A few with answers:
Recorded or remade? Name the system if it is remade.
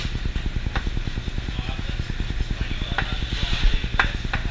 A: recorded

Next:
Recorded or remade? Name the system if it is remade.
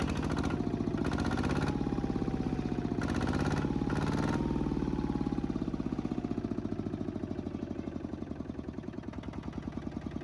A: recorded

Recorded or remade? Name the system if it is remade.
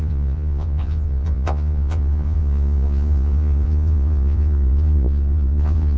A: remade, vocoder, Vocos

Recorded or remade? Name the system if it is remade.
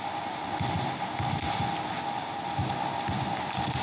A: recorded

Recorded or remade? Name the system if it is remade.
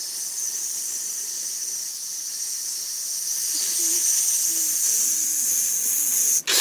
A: recorded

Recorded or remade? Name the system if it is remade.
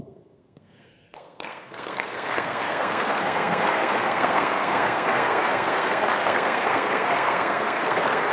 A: remade, codec, SNAC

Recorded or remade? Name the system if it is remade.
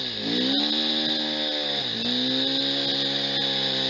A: recorded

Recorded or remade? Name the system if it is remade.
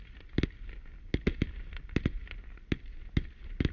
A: recorded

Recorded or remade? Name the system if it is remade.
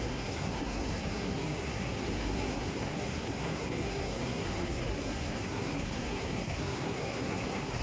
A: remade, codec, SNAC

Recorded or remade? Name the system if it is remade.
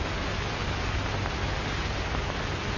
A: recorded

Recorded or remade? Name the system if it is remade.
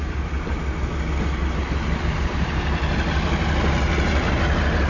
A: recorded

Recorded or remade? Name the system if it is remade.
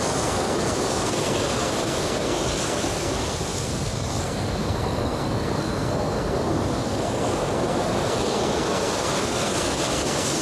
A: remade, codec, SNAC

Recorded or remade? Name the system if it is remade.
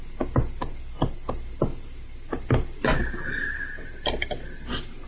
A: recorded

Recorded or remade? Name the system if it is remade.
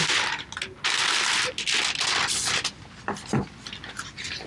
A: recorded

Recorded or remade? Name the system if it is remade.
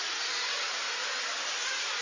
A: recorded